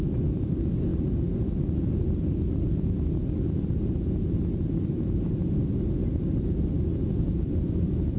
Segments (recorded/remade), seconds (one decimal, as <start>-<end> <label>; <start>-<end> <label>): 0.0-8.2 recorded